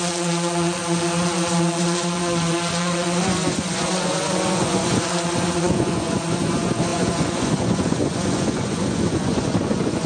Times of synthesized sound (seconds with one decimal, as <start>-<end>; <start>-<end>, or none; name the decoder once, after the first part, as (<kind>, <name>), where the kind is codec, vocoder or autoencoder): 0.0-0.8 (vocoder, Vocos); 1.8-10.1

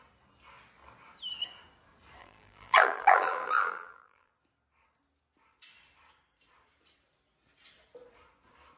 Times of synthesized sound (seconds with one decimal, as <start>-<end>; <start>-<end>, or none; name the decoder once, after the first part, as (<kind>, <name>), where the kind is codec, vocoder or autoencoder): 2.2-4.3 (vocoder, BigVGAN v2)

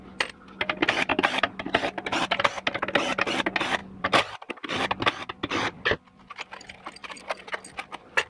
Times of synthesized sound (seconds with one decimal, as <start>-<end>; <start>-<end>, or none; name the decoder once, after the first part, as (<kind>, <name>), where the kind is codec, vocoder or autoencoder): 1.1-2.2 (vocoder, BigVGAN v2); 3.8-4.5; 7.0-7.5

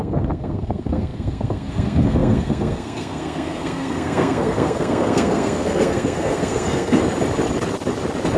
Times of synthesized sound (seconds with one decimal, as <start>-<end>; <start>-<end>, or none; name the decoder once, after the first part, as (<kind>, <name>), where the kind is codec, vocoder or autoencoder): 0.0-7.0 (codec, SNAC)

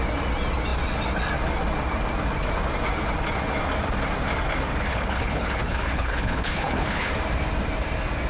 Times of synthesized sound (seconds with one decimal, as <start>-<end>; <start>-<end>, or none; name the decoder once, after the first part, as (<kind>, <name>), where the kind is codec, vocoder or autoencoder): 4.9-7.1 (codec, HILCodec)